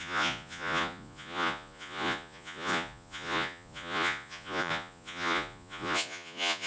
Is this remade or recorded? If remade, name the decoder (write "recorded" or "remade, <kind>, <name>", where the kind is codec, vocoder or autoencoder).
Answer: remade, vocoder, Vocos